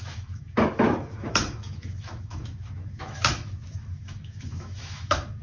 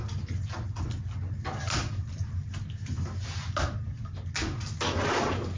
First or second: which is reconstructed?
first